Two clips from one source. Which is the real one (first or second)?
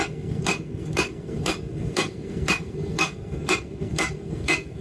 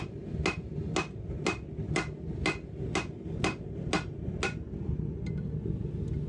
second